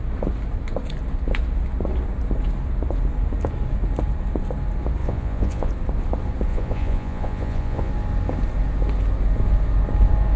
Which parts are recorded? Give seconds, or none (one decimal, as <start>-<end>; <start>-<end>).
0.0-5.0; 5.7-6.5; 7.9-10.4